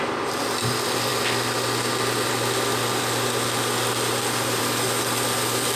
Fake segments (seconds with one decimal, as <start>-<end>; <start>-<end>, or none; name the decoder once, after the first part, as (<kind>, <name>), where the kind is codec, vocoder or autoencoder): none